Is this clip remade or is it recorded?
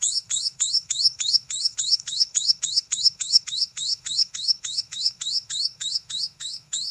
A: remade